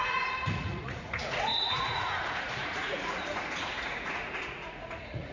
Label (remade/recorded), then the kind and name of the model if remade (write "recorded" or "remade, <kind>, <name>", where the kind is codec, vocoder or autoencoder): remade, vocoder, Vocos